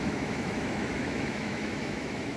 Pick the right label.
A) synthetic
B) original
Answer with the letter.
A